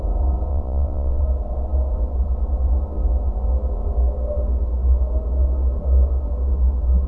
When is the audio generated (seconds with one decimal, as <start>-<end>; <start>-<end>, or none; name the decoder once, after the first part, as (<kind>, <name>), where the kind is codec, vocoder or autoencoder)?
0.5-1.2 (vocoder, WaveNeXt)